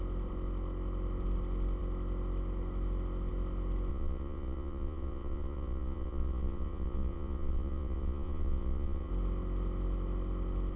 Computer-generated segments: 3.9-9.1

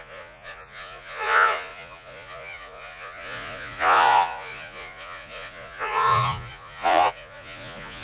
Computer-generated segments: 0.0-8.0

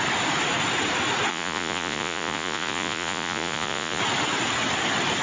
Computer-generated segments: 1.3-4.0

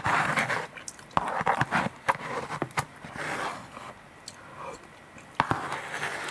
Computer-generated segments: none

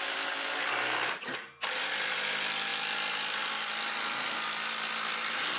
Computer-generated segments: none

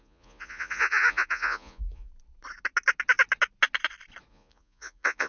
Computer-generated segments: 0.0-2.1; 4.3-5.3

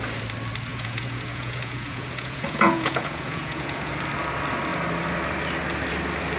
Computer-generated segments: 0.7-3.9